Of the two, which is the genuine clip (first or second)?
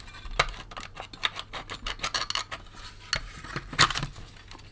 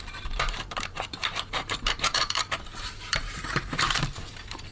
first